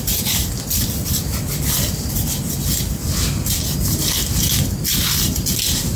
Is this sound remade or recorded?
recorded